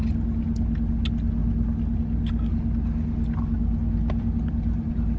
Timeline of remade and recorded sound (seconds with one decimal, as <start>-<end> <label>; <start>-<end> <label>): 0.0-5.2 recorded